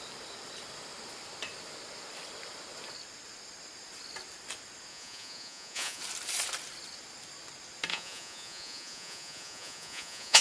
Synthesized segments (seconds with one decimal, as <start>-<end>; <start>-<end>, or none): 4.9-6.0; 7.9-10.4